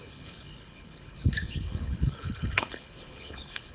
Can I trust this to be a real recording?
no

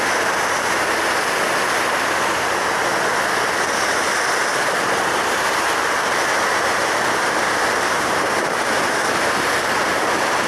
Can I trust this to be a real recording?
yes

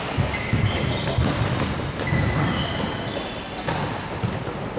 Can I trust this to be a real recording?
yes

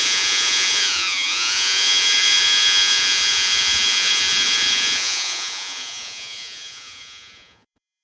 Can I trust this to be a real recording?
no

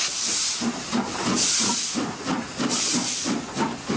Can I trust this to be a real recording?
yes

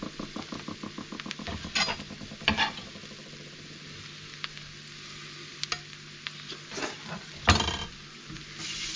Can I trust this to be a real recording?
yes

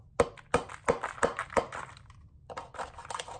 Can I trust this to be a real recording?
yes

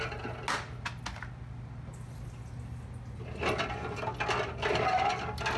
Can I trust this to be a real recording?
yes